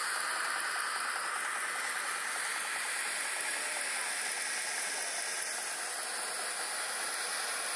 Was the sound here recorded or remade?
recorded